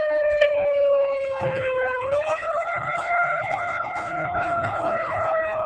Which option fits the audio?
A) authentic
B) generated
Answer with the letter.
B